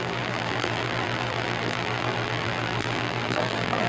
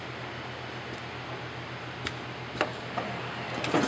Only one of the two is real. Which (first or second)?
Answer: second